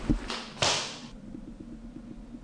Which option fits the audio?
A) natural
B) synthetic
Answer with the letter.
A